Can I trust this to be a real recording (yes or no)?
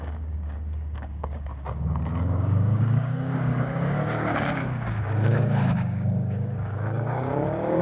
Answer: no